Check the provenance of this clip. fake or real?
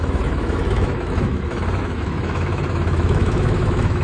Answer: fake